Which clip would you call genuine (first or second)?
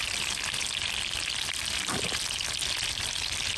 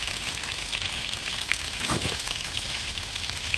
first